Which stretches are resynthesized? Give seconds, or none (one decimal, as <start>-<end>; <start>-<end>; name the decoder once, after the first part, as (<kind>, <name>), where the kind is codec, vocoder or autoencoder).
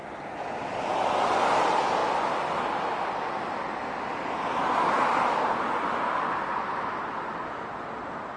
0.0-1.6 (vocoder, BigVGAN v2)